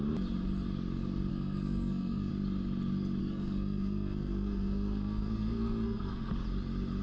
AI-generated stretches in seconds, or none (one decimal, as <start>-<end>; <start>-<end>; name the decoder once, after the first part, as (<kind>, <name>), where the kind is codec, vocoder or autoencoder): 1.3-2.3 (codec, SNAC); 3.2-6.3